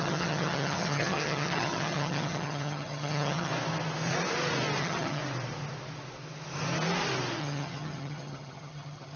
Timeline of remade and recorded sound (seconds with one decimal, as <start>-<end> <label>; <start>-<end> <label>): 0.0-3.5 remade; 3.5-4.8 recorded; 4.8-5.2 remade; 5.2-7.4 recorded; 7.4-9.2 remade